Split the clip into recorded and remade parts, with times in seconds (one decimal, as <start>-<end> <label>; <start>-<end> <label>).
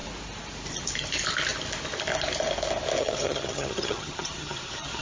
0.0-3.0 recorded; 3.0-5.0 remade